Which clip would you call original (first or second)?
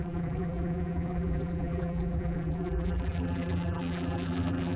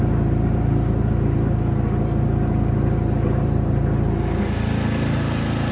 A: second